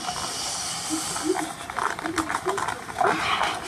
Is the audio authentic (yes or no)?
yes